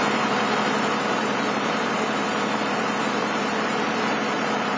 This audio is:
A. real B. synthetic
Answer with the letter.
B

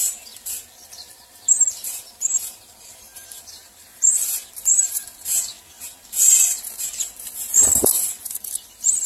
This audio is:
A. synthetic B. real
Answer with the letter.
A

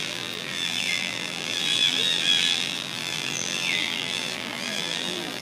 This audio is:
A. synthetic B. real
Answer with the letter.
A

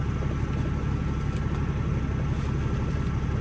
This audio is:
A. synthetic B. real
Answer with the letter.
B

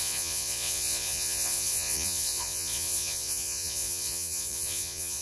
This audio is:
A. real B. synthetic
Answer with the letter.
B